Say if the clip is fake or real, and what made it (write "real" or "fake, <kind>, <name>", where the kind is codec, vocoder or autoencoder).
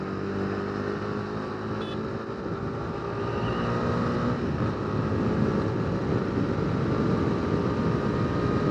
real